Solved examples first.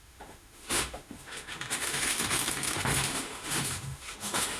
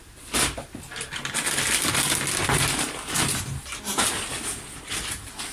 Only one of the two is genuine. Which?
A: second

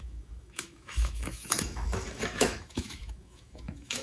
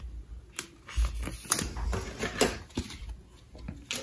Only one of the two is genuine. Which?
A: second